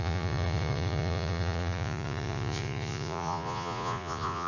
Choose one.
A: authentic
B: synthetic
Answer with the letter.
B